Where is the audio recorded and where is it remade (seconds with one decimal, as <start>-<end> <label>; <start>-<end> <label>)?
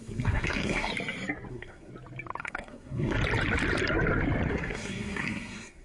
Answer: 0.0-0.9 remade; 0.9-1.5 recorded; 1.5-1.9 remade; 1.9-2.4 recorded; 2.4-3.2 remade; 3.2-4.5 recorded; 4.5-5.8 remade